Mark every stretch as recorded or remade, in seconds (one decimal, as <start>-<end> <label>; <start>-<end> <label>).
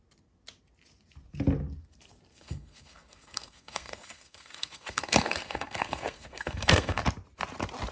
0.0-2.3 recorded; 2.3-7.0 remade; 7.0-7.9 recorded